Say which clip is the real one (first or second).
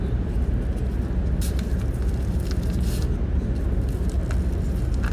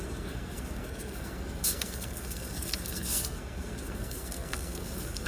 first